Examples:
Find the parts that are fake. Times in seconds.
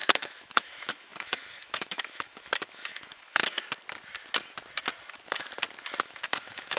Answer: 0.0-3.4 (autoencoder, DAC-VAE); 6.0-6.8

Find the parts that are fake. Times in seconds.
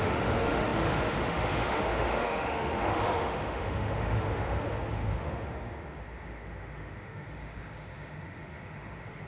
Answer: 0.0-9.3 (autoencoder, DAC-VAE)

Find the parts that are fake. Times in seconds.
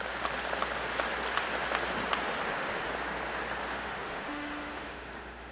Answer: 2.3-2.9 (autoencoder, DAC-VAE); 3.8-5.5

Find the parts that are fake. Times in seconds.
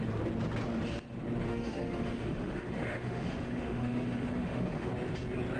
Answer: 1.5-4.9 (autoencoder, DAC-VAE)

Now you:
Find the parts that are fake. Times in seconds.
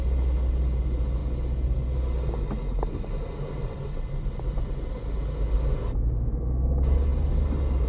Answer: none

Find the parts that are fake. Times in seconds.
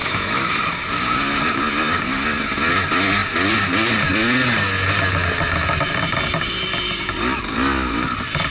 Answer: 0.0-0.6 (autoencoder, DAC-VAE)